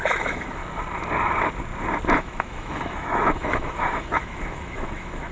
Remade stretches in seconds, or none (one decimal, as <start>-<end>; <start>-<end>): 0.0-0.6; 2.1-5.3

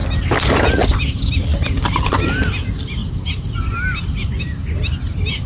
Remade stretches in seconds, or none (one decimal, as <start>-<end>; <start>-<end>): none

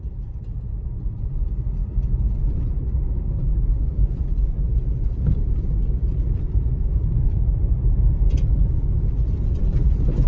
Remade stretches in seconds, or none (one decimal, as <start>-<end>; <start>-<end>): 1.8-5.7; 7.0-9.2; 9.6-10.3

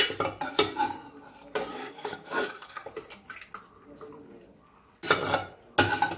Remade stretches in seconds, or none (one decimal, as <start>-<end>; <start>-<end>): 1.7-2.9

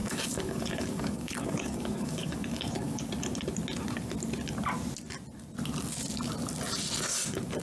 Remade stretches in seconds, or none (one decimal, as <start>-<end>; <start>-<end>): 0.0-3.0

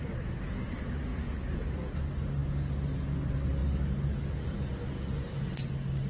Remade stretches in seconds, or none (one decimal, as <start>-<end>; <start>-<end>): 1.1-1.9

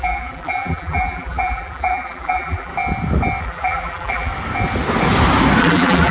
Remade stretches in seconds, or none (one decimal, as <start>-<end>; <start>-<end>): 0.0-2.7; 3.4-4.3; 5.6-6.1